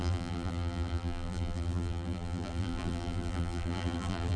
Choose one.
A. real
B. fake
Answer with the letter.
B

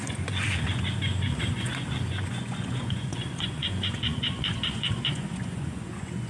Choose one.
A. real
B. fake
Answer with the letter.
B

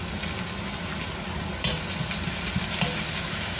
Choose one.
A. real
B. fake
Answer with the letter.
A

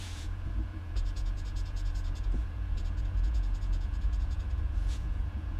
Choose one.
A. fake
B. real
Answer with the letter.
A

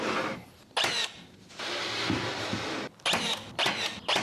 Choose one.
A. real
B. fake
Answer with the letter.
A